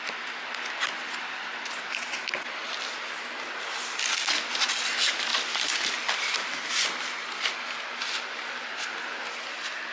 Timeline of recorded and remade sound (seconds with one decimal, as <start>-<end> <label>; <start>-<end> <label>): 0.0-5.3 recorded; 5.3-6.5 remade; 6.5-9.9 recorded